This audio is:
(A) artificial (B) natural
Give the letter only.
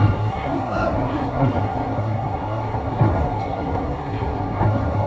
A